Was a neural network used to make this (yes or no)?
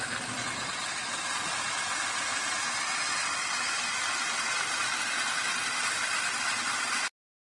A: no